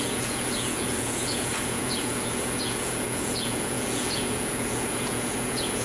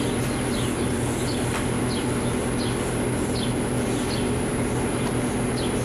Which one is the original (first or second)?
second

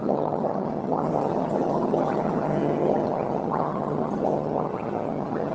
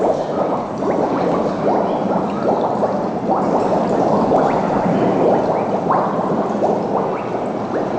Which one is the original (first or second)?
second